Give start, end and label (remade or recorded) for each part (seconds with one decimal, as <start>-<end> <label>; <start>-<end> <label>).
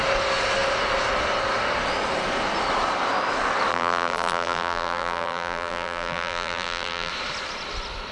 0.0-3.7 recorded; 3.7-7.1 remade; 7.1-8.1 recorded